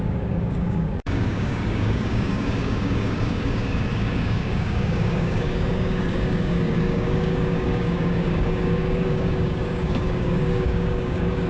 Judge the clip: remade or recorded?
remade